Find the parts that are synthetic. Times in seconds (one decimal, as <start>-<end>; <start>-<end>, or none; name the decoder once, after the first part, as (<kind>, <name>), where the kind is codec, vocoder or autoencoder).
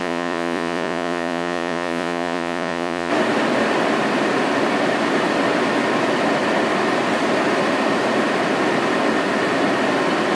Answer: 0.0-3.1 (vocoder, Vocos)